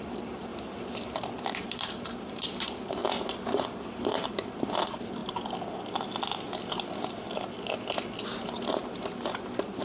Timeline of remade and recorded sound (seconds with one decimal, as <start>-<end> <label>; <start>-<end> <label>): 0.0-0.5 remade; 0.5-1.6 recorded; 1.6-3.0 remade; 3.0-3.9 recorded; 3.9-5.2 remade; 5.2-8.7 recorded; 8.7-9.8 remade